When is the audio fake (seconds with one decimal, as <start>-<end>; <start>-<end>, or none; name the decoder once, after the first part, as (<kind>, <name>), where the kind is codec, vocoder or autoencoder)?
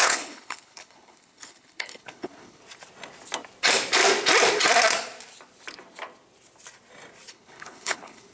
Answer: 0.0-2.6 (codec, HILCodec); 7.3-8.3